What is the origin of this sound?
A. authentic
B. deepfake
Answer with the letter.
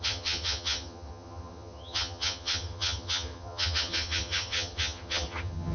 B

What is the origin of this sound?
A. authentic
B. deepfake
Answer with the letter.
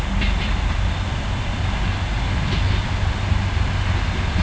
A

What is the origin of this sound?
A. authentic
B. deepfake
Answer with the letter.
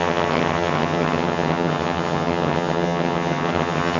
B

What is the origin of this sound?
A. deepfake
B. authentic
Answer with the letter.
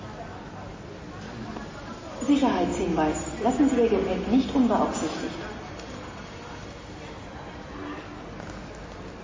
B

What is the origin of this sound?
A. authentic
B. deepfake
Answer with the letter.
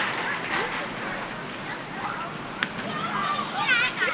A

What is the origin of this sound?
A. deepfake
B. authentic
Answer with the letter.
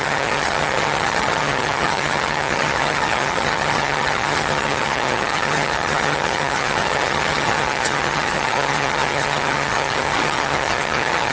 A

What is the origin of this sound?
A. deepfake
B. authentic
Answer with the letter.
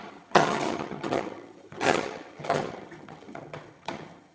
A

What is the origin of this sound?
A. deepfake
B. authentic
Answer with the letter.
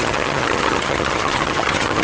A